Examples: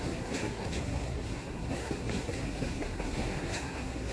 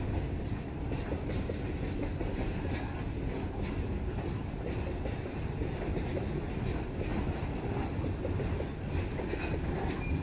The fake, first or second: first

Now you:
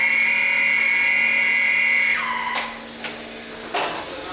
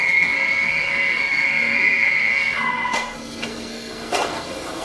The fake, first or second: second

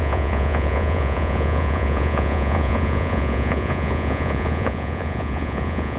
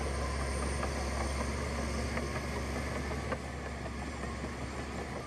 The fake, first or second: first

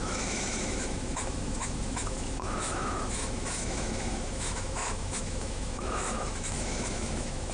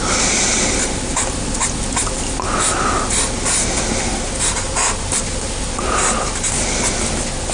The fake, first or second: first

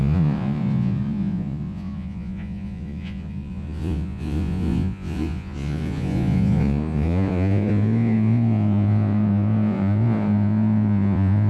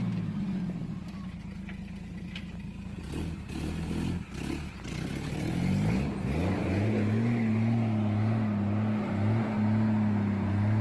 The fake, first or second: first